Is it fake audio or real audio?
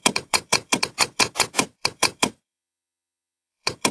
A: fake